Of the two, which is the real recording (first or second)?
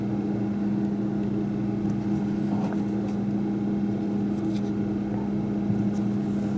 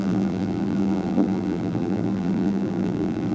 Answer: first